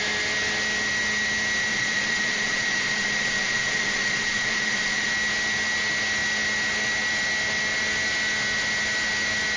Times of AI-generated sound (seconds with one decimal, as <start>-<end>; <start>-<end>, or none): 1.7-5.1

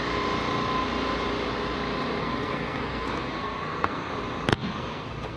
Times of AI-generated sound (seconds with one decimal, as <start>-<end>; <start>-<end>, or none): 2.2-4.1; 4.5-5.4

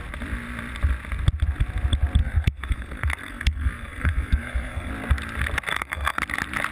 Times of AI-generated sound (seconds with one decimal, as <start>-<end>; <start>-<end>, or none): 2.2-4.9; 5.7-6.2

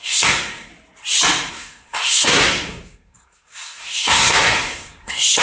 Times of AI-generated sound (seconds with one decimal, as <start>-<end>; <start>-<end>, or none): 0.0-0.7; 1.5-5.4

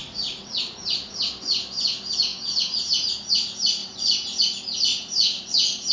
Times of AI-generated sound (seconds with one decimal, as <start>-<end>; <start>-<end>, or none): 0.0-1.3; 2.3-3.3; 4.9-5.9